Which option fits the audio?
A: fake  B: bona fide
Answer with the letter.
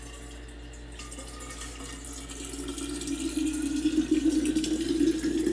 B